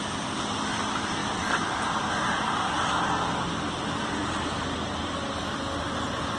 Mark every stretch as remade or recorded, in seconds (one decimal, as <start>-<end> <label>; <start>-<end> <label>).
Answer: 0.0-6.4 recorded